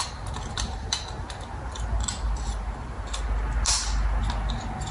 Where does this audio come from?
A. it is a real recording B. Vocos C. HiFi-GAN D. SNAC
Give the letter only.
A